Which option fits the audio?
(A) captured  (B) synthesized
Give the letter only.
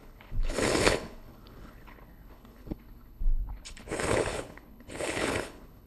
B